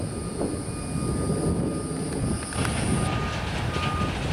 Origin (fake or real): real